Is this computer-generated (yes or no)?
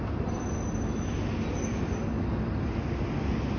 no